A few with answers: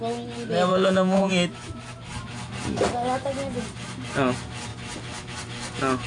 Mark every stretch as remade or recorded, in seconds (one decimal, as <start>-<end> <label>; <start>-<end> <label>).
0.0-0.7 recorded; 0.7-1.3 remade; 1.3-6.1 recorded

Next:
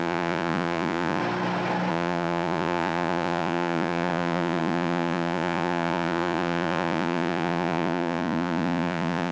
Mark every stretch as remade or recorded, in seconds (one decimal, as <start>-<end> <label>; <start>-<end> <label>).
0.0-1.2 remade; 1.2-1.9 recorded; 1.9-9.3 remade

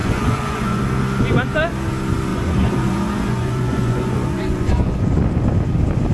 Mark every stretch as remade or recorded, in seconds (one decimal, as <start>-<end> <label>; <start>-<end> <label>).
0.0-0.8 remade; 0.8-2.3 recorded; 2.3-5.2 remade; 5.2-6.1 recorded

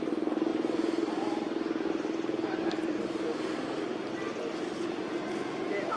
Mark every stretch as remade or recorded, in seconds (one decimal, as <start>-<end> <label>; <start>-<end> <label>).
0.0-6.0 recorded